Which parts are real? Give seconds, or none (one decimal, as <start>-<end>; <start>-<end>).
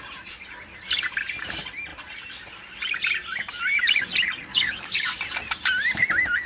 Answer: 0.0-4.5; 5.2-6.5